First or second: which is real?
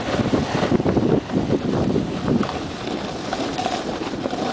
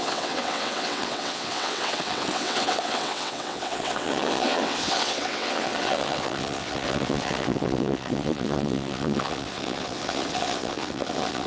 first